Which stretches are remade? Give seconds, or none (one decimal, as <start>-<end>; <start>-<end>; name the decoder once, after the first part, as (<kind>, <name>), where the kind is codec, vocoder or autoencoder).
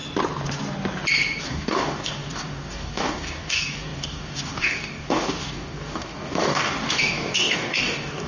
1.4-8.3 (codec, DAC)